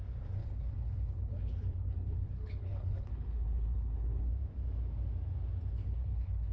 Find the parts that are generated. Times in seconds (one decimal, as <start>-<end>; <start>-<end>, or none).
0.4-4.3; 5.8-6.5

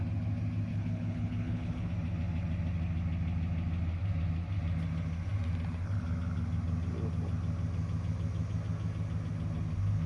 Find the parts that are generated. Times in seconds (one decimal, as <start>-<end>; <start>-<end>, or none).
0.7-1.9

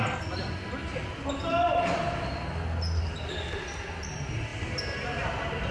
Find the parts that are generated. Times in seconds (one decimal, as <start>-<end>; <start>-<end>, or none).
none

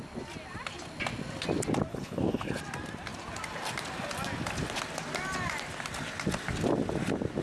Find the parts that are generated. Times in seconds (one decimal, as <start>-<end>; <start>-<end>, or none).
1.9-2.6

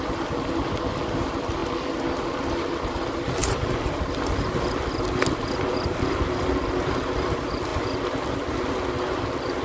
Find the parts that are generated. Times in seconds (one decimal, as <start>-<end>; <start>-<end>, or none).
none